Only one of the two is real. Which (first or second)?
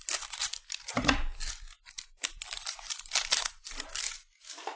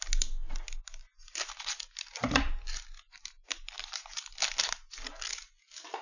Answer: second